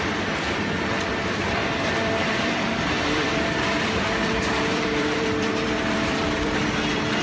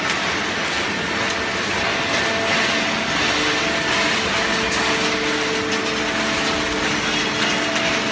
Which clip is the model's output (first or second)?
first